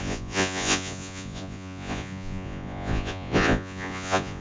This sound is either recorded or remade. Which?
remade